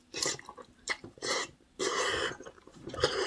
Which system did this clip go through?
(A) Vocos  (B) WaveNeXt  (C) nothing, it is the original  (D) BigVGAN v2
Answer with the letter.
D